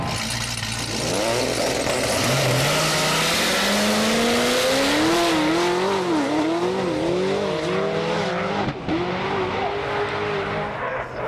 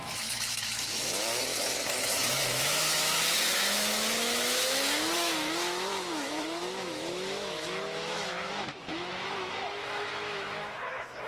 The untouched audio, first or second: first